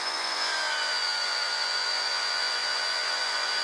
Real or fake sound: fake